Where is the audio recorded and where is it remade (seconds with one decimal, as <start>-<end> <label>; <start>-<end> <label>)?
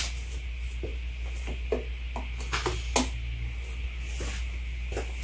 0.0-5.2 recorded